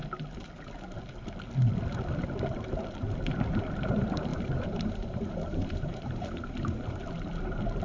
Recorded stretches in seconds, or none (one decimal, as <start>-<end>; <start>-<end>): 0.0-4.3; 7.0-7.8